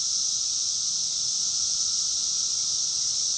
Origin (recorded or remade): recorded